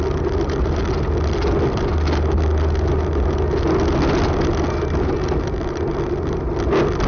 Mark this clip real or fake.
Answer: real